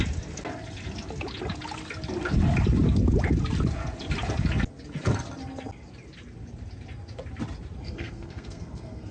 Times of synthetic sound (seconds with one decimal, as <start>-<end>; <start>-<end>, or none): 7.8-9.1